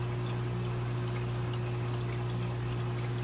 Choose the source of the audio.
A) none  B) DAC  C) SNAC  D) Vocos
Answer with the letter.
A